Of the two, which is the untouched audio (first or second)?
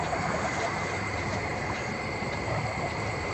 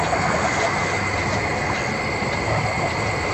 second